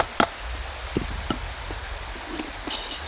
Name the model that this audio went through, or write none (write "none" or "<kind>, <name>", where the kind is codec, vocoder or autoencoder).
none